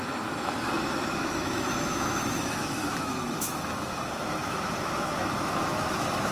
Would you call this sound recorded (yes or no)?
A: no